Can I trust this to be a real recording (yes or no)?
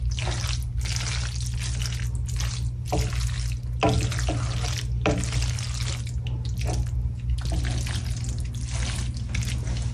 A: yes